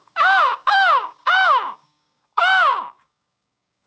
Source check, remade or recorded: remade